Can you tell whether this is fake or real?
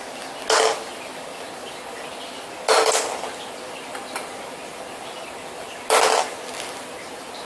real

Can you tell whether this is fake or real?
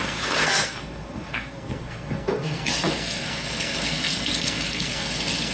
fake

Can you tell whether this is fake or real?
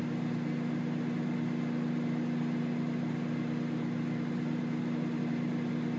real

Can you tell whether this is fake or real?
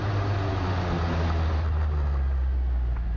real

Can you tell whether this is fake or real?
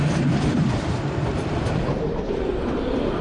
fake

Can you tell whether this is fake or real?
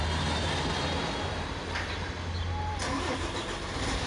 real